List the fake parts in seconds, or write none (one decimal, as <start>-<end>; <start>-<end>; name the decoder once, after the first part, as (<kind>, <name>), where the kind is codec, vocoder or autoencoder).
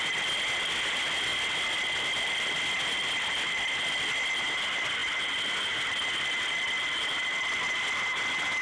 none